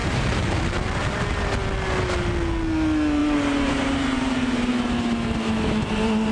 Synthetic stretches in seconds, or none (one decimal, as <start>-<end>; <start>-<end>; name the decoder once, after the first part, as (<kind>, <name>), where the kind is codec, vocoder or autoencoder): 0.0-0.6 (vocoder, BigVGAN v2); 3.2-4.7